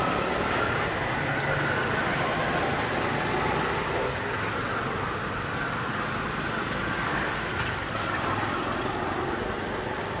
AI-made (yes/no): no